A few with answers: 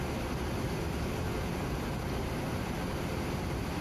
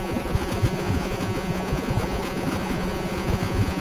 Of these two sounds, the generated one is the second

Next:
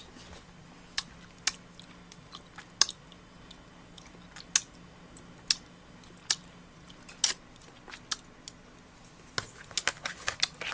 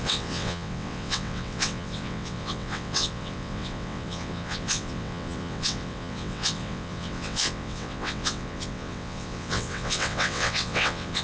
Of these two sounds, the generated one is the second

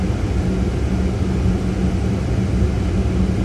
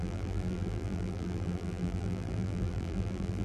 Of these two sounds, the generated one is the second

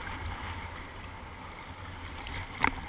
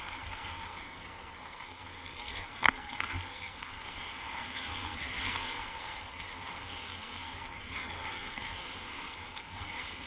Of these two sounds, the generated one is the second